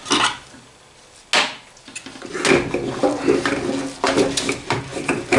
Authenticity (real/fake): real